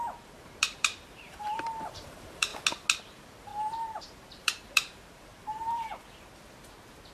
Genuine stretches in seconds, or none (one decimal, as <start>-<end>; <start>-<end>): 2.5-3.0; 3.5-4.0; 5.9-7.1